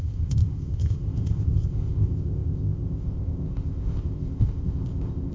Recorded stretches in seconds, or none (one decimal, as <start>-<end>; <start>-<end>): none